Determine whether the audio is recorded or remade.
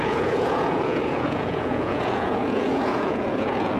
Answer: remade